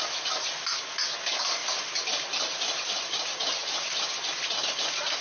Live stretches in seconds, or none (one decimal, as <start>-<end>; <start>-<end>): 0.0-5.2